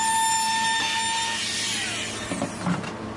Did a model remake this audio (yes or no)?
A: no